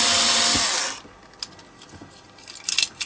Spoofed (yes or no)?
no